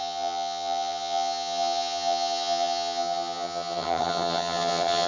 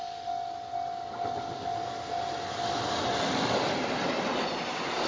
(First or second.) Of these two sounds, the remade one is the first